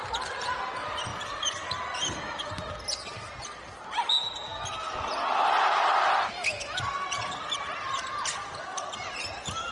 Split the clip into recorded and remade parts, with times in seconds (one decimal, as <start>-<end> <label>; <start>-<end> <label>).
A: 0.0-1.1 recorded; 1.1-2.6 remade; 2.6-9.7 recorded